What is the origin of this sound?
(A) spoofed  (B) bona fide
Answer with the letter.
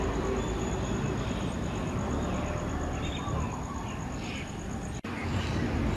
B